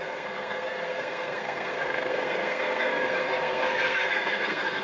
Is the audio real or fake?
fake